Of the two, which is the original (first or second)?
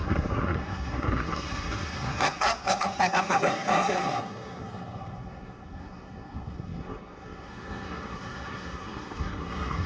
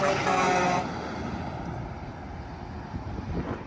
second